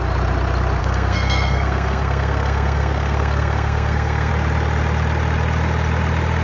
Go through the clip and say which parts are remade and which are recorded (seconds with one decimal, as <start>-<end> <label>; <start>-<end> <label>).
0.0-0.8 recorded; 0.8-4.3 remade; 4.3-6.4 recorded

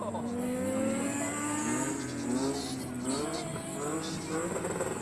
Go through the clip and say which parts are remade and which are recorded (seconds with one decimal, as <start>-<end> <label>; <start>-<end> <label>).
0.0-5.0 recorded

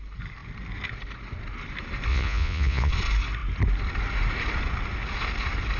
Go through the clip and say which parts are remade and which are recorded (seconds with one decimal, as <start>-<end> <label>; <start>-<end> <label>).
0.0-2.1 recorded; 2.1-2.9 remade; 2.9-5.8 recorded

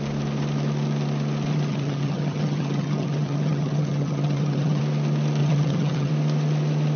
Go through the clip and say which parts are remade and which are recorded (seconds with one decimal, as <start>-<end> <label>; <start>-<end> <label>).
0.0-1.5 recorded; 1.5-4.8 remade; 4.8-5.4 recorded; 5.4-6.1 remade; 6.1-7.0 recorded